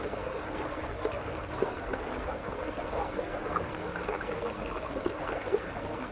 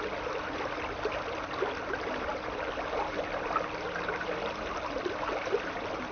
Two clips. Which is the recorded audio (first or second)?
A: second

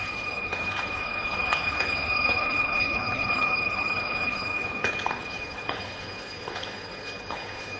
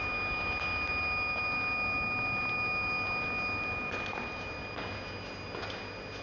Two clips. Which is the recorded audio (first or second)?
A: second